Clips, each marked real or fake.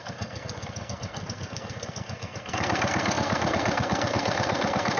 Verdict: fake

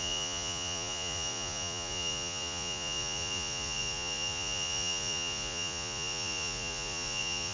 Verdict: fake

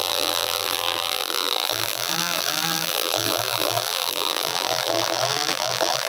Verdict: fake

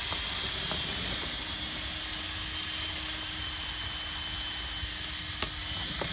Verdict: real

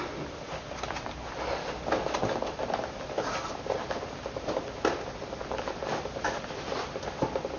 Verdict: real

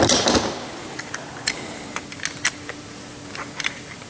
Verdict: real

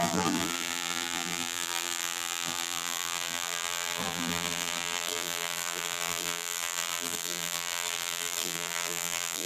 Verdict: fake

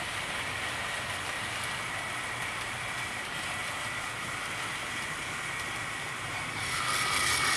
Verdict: real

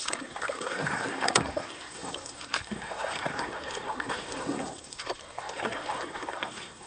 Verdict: fake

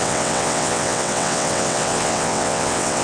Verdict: fake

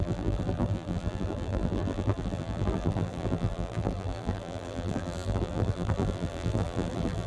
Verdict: fake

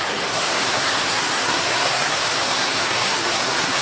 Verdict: fake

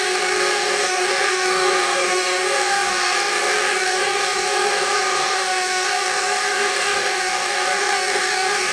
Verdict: fake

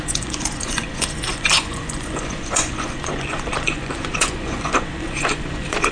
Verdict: fake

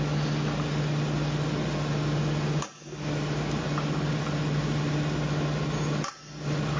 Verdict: real